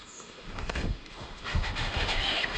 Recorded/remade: remade